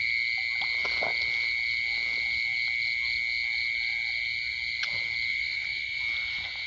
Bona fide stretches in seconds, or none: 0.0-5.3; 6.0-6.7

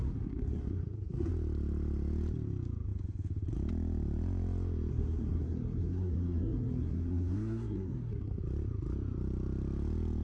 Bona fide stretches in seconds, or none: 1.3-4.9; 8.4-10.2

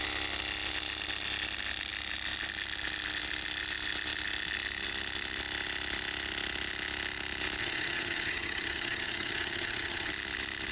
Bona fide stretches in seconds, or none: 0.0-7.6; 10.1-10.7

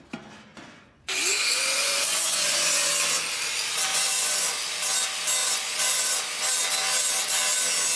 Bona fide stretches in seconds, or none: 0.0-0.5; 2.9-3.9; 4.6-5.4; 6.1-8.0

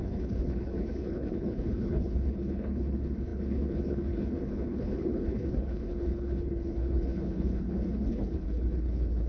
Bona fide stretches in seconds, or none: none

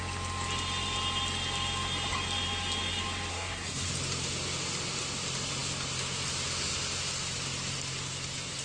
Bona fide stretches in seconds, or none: 0.0-3.3; 3.9-8.6

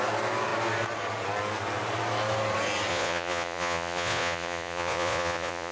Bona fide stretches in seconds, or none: 0.0-2.9

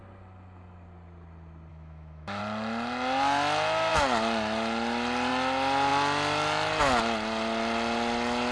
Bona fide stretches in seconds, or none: 0.0-1.7; 2.4-8.5